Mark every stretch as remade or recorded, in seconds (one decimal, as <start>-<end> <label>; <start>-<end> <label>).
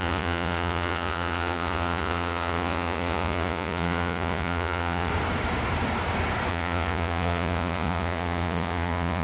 0.0-5.1 remade; 5.1-6.5 recorded; 6.5-9.2 remade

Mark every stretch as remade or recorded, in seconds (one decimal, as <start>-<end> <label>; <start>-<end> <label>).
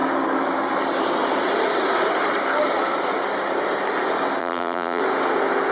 0.0-4.4 recorded; 4.4-5.0 remade; 5.0-5.7 recorded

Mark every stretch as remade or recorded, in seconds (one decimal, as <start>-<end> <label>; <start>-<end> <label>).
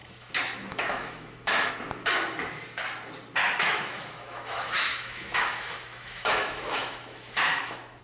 0.0-1.7 remade; 1.7-3.4 recorded; 3.4-8.0 remade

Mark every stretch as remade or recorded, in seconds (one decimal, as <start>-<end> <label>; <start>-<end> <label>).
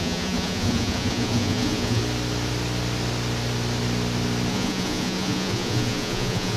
0.0-2.0 remade; 2.0-4.5 recorded; 4.5-6.6 remade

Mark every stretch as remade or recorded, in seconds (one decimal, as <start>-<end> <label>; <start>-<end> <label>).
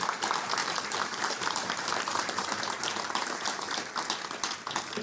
0.0-0.6 recorded; 0.6-3.6 remade; 3.6-5.0 recorded